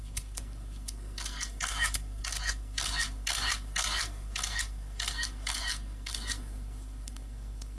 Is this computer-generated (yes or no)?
yes